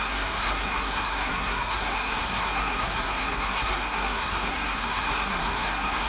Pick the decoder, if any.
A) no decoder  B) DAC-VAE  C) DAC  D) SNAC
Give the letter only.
D